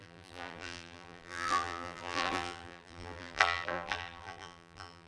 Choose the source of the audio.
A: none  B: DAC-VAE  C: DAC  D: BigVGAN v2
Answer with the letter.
D